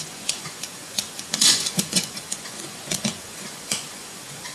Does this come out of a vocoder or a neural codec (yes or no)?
yes